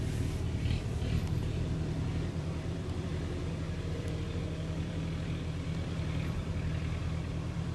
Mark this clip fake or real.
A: fake